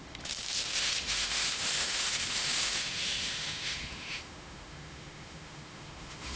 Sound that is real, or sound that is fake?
fake